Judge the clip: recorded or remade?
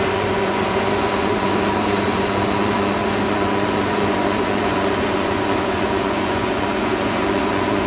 remade